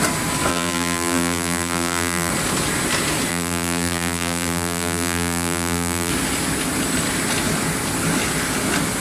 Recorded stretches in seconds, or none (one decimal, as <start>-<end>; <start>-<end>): 0.0-0.5; 2.3-3.3; 6.1-9.0